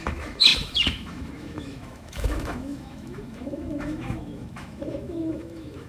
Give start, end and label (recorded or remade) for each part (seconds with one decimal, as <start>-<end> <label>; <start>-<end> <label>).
0.0-5.9 remade